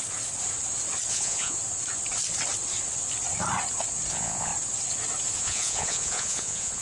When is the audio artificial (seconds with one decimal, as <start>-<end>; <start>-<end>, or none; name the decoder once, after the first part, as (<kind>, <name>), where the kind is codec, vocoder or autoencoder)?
1.1-1.6 (vocoder, Vocos); 4.1-4.5; 5.4-6.8